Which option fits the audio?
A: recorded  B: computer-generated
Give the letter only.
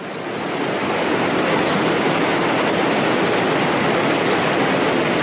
A